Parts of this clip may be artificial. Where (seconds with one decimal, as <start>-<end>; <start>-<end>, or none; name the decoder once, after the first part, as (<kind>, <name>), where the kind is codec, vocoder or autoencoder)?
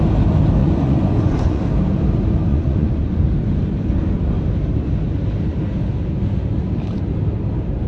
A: 0.6-1.6 (vocoder, Vocos); 2.5-3.1